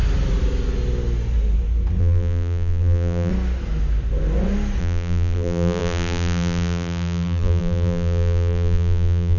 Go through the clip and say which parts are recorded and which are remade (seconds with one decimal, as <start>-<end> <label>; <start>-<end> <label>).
0.0-2.0 recorded; 2.0-3.3 remade; 3.3-4.8 recorded; 4.8-9.4 remade